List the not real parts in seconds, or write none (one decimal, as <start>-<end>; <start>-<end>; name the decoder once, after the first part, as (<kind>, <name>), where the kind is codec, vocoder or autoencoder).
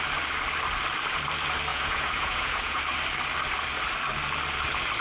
1.7-2.8 (vocoder, Vocos)